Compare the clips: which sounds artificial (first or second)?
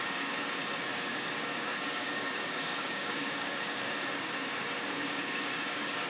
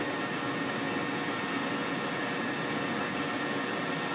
first